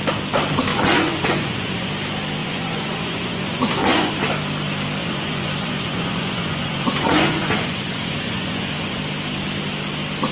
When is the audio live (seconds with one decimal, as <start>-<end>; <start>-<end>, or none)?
0.0-0.7; 1.9-2.4; 4.1-5.0; 9.0-10.3